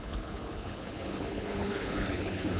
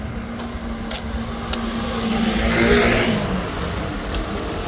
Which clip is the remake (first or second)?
first